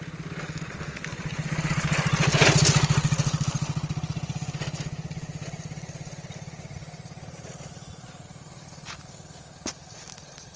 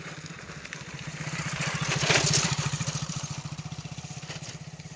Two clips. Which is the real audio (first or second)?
first